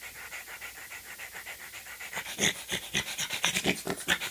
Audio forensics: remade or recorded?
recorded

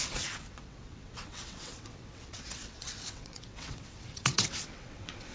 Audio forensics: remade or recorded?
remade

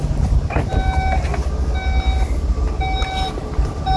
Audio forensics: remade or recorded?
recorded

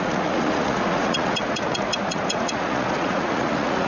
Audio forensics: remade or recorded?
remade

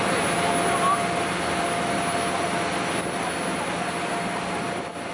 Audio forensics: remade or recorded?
recorded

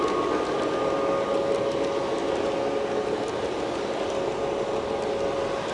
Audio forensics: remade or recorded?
recorded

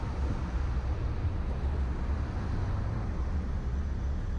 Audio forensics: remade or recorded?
recorded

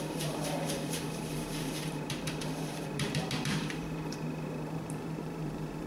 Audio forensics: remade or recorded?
remade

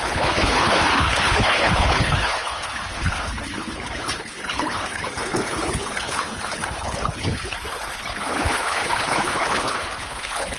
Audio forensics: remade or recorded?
remade